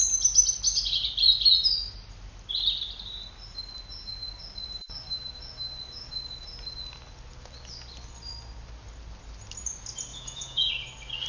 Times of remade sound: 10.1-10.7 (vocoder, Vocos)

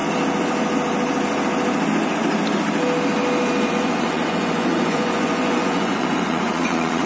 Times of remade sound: 3.7-7.1 (vocoder, Vocos)

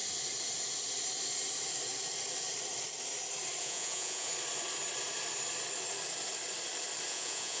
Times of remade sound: 3.6-4.3 (vocoder, Vocos); 7.1-7.6

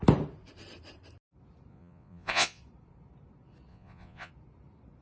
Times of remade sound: 1.7-2.6 (vocoder, Vocos); 3.7-4.3

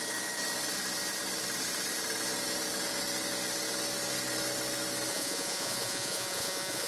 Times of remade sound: 5.1-6.9 (vocoder, Vocos)

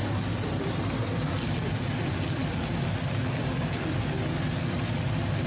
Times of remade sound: none

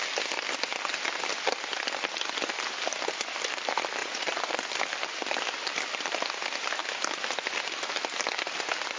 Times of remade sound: 4.0-4.5 (vocoder, Vocos)